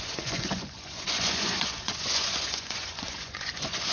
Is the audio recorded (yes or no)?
no